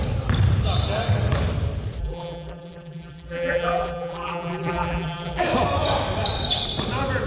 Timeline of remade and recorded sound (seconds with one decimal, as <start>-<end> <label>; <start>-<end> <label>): 0.0-2.0 recorded; 2.0-5.4 remade; 5.4-7.3 recorded